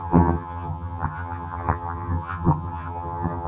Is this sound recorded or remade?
remade